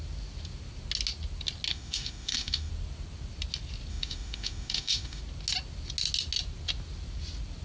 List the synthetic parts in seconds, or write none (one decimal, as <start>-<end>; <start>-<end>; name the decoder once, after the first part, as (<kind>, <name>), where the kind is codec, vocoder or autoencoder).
1.7-2.7 (autoencoder, DAC-VAE); 3.9-5.2